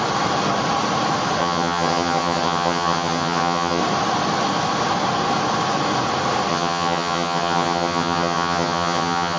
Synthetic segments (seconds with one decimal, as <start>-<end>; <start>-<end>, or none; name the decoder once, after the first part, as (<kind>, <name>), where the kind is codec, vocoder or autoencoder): 1.4-3.8 (vocoder, HiFi-GAN); 6.5-9.4